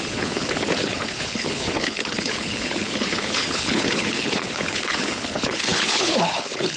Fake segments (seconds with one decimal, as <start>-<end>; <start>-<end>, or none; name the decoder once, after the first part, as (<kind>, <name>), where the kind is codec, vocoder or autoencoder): 0.0-6.8 (codec, HILCodec)